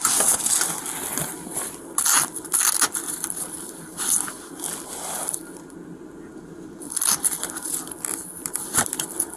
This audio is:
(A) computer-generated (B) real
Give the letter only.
B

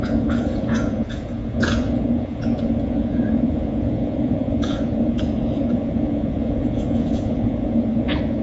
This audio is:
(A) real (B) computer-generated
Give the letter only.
B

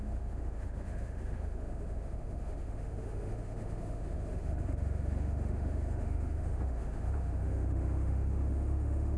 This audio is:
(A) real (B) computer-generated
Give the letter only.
B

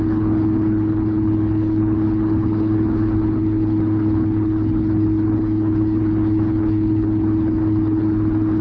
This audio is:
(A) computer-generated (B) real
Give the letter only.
A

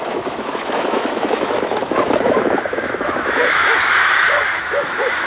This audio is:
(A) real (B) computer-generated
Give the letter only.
B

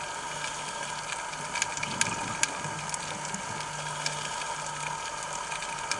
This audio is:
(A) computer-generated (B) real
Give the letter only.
B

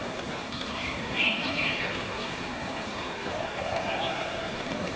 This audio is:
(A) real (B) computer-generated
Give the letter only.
B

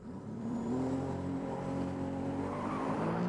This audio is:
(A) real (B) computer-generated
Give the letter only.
B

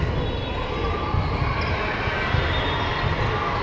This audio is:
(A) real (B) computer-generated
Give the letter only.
A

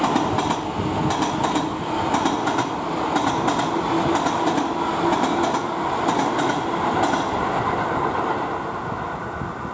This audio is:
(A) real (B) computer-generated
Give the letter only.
A